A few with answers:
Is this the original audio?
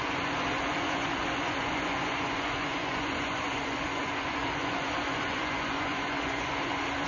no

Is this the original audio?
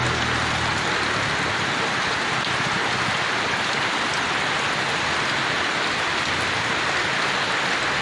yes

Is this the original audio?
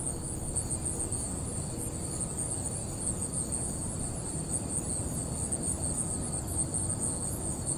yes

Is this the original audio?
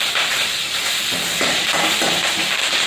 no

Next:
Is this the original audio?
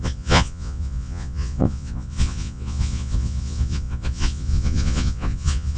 no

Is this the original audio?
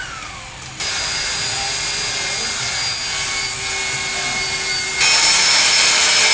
yes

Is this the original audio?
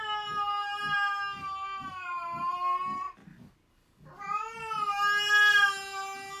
yes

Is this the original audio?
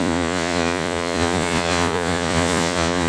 no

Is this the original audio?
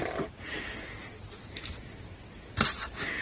yes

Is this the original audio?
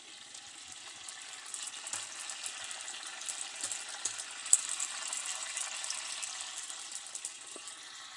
yes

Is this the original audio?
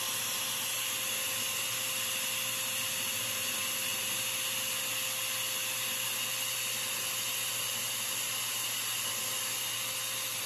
yes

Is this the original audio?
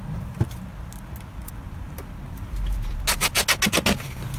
yes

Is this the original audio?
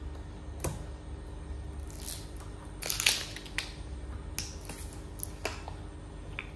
yes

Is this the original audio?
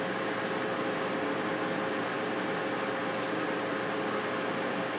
yes